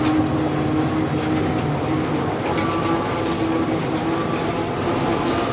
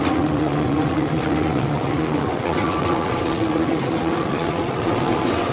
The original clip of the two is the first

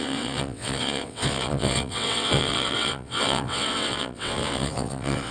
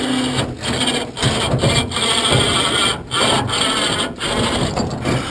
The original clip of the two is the second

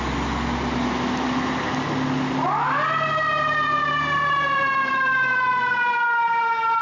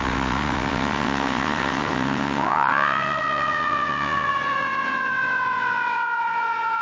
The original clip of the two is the first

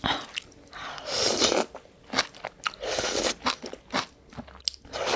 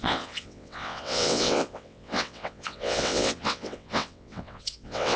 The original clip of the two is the first